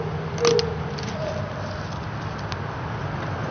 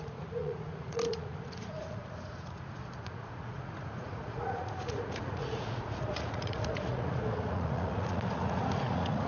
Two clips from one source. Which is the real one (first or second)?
first